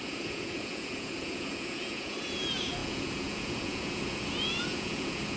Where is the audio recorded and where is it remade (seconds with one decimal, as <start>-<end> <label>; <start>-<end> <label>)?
0.0-5.4 remade